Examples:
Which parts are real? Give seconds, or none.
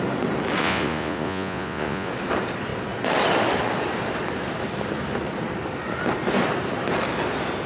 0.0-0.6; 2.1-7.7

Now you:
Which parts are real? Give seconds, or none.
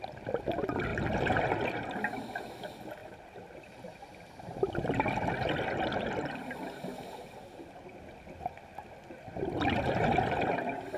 0.0-0.9; 1.4-3.0; 5.3-11.0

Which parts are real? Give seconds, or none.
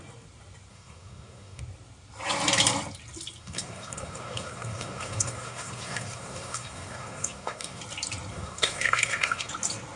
0.0-0.7; 1.6-3.4; 7.8-8.3; 9.5-10.0